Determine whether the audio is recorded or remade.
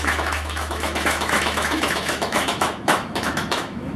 remade